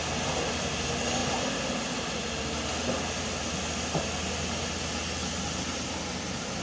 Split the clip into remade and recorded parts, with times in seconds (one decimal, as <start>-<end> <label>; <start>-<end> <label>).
0.0-6.6 recorded